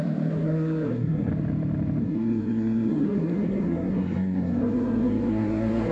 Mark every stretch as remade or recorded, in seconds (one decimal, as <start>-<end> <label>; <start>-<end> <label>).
0.0-1.3 remade; 1.3-2.0 recorded; 2.0-5.9 remade